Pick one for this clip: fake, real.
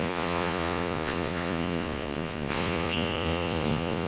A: fake